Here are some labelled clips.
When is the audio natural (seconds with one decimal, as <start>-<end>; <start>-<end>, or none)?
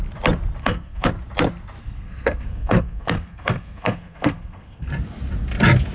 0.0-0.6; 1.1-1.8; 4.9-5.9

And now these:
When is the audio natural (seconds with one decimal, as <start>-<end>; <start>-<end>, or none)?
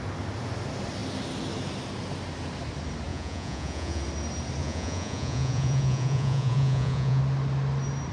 0.0-3.1; 4.0-4.6; 7.2-8.1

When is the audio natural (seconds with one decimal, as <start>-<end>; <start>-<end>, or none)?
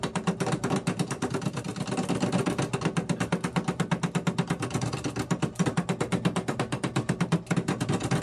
0.0-8.2